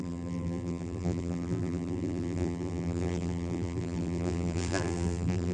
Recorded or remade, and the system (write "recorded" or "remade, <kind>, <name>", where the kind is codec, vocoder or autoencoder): remade, vocoder, BigVGAN v2